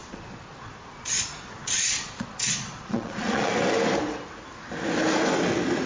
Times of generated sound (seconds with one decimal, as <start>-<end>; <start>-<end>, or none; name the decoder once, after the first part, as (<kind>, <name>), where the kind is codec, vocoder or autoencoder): 0.0-3.5 (vocoder, Vocos)